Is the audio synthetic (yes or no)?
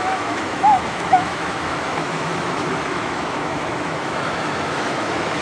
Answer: yes